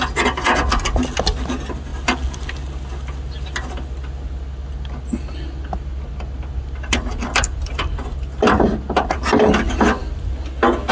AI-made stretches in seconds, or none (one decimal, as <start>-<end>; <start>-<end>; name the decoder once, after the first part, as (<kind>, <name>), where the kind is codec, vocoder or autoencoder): none